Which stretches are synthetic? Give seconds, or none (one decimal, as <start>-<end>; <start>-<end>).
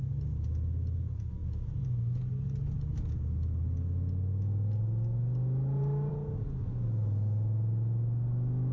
none